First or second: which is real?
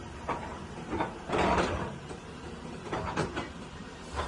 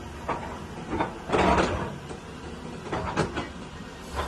second